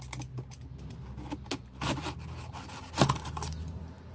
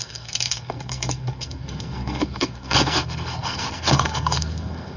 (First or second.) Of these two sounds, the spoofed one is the second